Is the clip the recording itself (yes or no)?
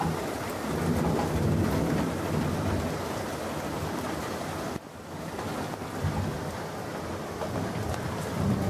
yes